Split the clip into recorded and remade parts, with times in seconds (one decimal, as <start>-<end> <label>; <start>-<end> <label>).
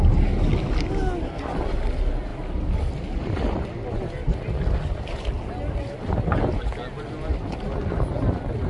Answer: 0.0-8.7 recorded